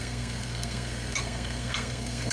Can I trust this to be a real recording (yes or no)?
no